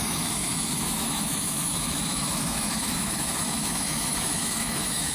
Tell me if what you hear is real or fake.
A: fake